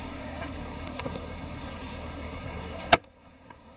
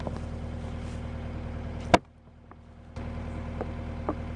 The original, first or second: second